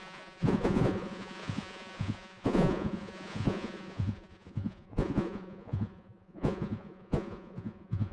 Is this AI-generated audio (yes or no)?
yes